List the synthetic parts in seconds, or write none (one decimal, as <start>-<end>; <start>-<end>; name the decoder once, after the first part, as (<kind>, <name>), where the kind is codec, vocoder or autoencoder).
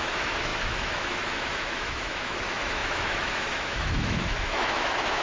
0.0-5.2 (autoencoder, DAC-VAE)